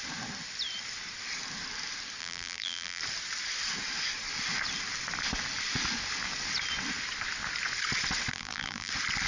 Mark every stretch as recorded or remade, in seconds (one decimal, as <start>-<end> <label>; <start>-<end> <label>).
0.0-2.2 recorded; 2.2-3.0 remade; 3.0-8.3 recorded; 8.3-8.9 remade; 8.9-9.3 recorded